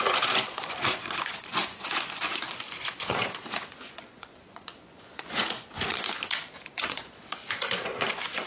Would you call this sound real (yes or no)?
no